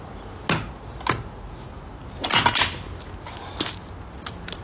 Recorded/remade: recorded